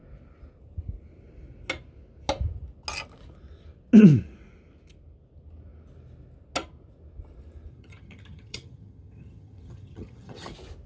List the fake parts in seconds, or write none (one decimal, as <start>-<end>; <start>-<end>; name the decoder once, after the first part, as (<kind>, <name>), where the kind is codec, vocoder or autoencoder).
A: 7.7-10.5 (vocoder, HiFi-GAN)